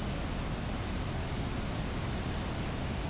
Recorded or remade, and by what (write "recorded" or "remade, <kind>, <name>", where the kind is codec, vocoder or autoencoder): recorded